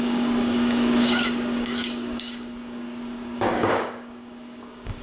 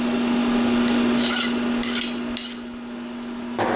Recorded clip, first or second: second